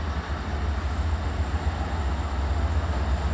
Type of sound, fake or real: real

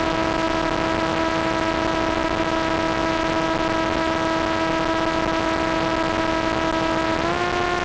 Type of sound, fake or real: real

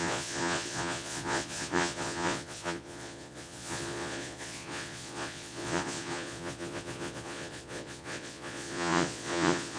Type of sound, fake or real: fake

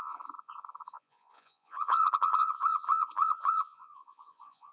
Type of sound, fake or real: fake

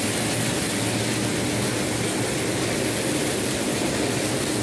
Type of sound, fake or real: real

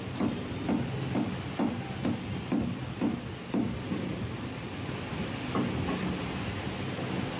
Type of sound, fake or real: real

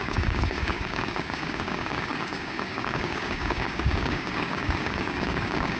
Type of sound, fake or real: fake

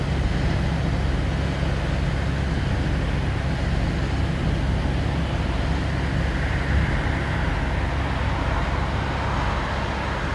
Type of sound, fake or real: real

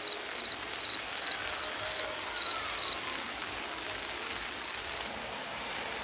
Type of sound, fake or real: real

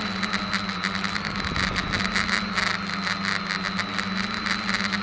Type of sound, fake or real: real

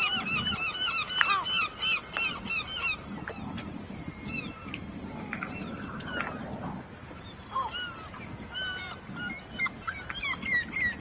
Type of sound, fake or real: real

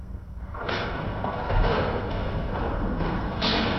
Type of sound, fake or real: fake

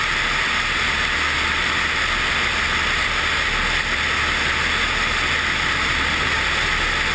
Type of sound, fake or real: real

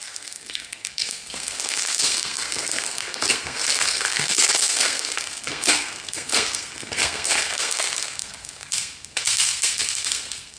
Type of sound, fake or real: fake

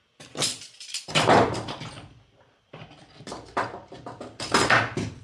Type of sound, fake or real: fake